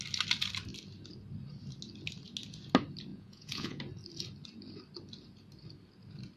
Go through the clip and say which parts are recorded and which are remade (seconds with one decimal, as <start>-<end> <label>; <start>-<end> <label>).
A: 0.0-3.1 recorded; 3.1-3.8 remade; 3.8-6.4 recorded

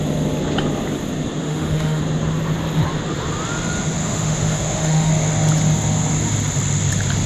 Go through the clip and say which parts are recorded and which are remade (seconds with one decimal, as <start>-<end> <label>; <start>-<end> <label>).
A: 0.0-1.4 recorded; 1.4-2.0 remade; 2.0-4.0 recorded; 4.0-5.1 remade; 5.1-7.3 recorded